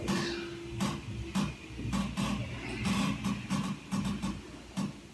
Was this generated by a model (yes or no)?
no